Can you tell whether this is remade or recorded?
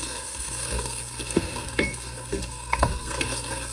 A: remade